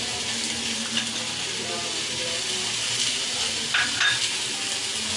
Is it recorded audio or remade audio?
recorded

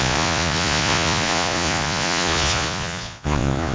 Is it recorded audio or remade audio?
remade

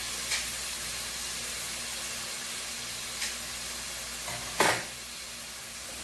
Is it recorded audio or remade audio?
recorded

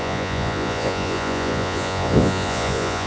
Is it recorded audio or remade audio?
remade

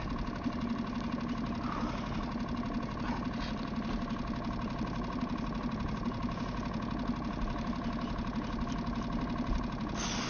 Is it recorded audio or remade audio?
recorded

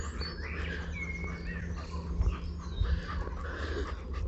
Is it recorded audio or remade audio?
recorded